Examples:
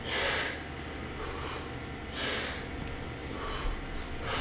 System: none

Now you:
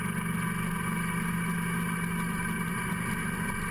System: none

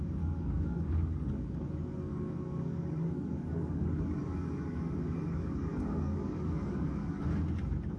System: codec, DAC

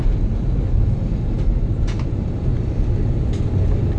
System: none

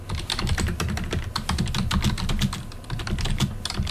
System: none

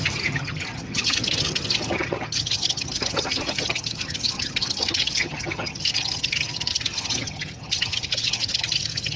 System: vocoder, HiFi-GAN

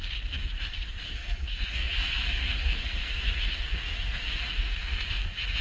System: codec, SNAC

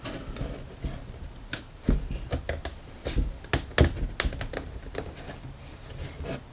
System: none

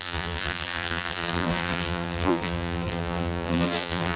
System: vocoder, BigVGAN v2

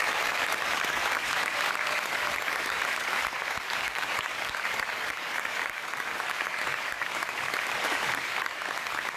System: codec, DAC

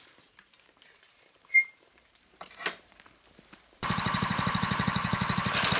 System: vocoder, BigVGAN v2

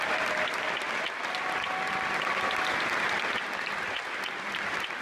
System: none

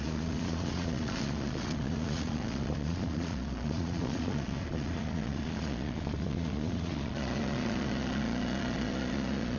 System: vocoder, Vocos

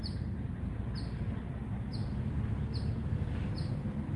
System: none